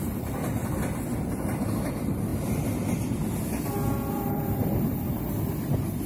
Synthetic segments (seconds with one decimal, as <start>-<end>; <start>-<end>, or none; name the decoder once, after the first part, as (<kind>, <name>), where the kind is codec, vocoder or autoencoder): 0.0-0.6 (vocoder, BigVGAN v2); 1.9-2.3; 4.1-6.1